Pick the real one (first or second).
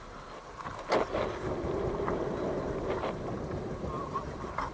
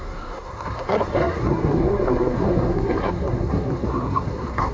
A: first